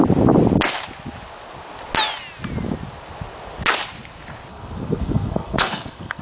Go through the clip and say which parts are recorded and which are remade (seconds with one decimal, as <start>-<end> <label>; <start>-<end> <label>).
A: 0.0-4.5 recorded; 4.5-6.2 remade